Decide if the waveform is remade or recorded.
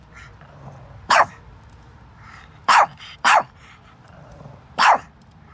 remade